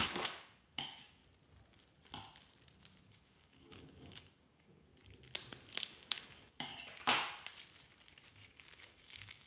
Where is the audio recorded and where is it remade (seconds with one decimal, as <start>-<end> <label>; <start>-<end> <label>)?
0.0-1.2 remade; 1.2-3.0 recorded; 3.0-4.9 remade; 4.9-5.8 recorded; 5.8-6.7 remade; 6.7-8.3 recorded; 8.3-9.5 remade